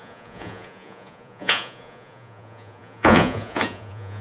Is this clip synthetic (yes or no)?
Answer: yes